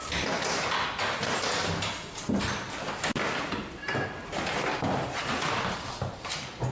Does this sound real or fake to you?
real